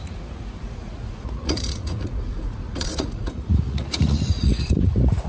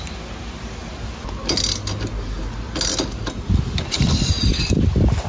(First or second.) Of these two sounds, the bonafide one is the second